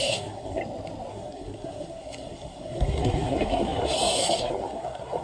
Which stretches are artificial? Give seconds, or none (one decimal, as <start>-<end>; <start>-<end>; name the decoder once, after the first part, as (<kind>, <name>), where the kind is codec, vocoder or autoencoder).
0.0-0.6 (codec, SNAC); 1.1-5.2